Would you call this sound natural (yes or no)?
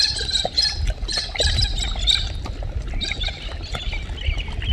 yes